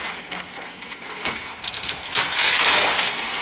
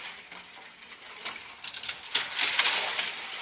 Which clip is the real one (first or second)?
second